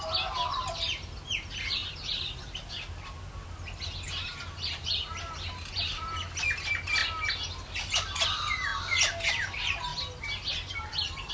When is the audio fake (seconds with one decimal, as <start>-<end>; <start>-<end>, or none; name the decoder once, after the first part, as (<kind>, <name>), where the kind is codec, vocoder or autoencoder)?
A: none

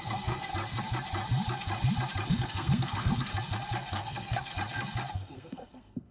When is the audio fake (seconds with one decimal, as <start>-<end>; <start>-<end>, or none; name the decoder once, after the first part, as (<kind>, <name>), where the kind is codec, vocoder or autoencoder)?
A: 0.0-0.5 (codec, SNAC); 2.3-3.3; 3.9-4.5; 5.1-6.1

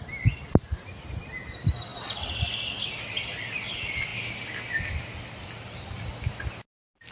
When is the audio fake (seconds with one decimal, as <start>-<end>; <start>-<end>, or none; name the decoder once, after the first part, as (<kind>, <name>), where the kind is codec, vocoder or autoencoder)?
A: none

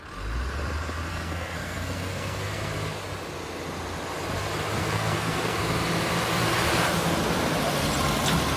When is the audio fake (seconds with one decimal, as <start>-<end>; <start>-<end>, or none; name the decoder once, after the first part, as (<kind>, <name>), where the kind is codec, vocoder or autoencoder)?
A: 1.1-2.7 (codec, SNAC); 4.8-5.6

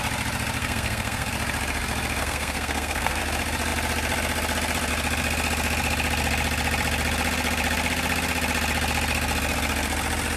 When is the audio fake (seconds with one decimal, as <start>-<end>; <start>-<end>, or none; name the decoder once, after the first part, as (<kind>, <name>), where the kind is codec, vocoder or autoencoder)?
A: 0.6-1.3 (codec, SNAC); 2.2-3.2